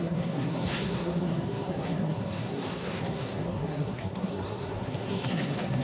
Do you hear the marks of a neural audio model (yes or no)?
yes